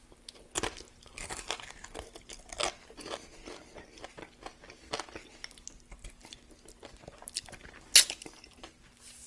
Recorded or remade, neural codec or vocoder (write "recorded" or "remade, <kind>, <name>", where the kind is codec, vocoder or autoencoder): recorded